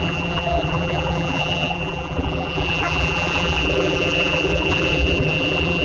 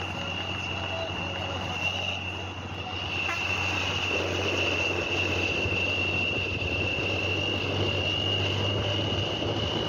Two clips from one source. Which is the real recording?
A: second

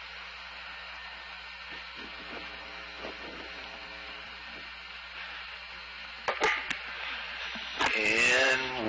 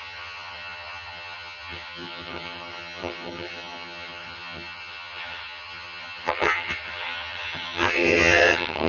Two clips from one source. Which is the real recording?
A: first